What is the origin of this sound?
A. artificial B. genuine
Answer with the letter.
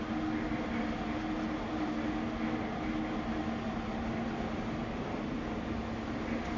B